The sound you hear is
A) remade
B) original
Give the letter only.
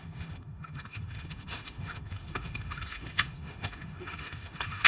A